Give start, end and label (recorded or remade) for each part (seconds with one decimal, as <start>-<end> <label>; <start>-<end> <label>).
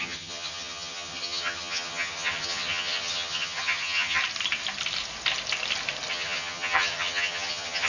0.0-4.2 remade; 4.2-6.1 recorded; 6.1-7.9 remade